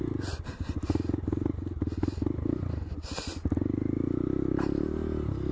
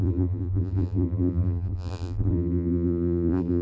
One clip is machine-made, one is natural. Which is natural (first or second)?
first